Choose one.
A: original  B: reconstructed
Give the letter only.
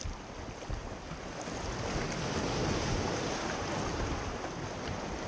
A